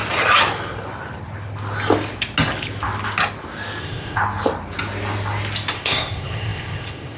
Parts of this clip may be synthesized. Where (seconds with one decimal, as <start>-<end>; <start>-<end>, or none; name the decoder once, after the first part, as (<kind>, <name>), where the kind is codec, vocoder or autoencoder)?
3.8-4.2 (codec, ZipCodec); 5.7-7.2